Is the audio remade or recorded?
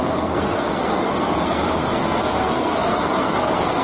remade